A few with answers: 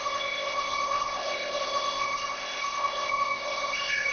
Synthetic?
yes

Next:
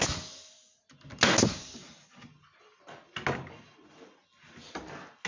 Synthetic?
no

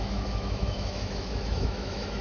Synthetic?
yes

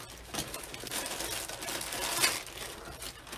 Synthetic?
no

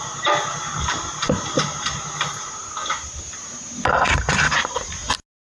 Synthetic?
no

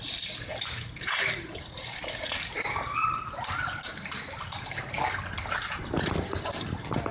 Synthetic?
no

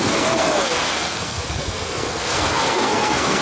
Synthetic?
yes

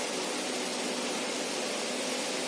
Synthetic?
no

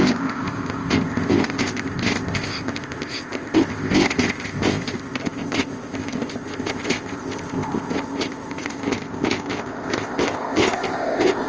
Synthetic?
yes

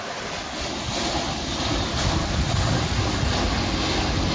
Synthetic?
no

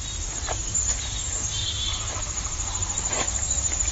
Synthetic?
yes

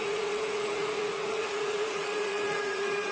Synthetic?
yes